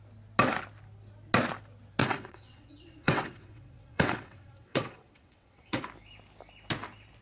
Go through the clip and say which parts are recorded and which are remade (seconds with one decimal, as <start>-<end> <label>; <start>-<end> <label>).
0.0-2.0 recorded; 2.0-5.8 remade; 5.8-7.2 recorded